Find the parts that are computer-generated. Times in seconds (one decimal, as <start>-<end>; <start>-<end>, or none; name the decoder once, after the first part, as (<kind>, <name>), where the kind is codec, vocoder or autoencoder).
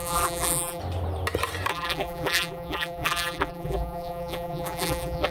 0.0-0.8 (vocoder, BigVGAN v2); 1.7-5.3